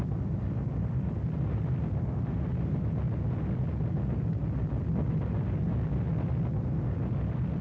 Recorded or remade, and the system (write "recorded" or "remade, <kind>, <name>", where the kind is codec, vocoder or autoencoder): recorded